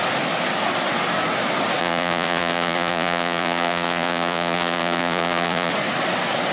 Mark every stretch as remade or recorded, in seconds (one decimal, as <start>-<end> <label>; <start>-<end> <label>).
0.0-1.8 recorded; 1.8-5.7 remade; 5.7-6.5 recorded